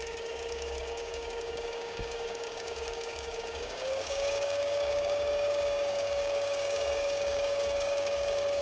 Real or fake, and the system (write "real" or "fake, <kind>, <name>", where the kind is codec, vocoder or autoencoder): fake, codec, DAC